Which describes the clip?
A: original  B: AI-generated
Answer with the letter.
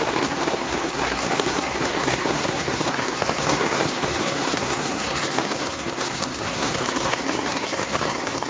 B